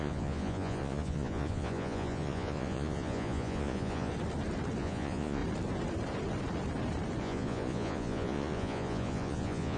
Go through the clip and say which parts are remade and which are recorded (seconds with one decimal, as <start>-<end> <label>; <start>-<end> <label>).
0.0-4.1 remade; 4.1-4.8 recorded; 4.8-5.4 remade; 5.4-7.2 recorded; 7.2-9.8 remade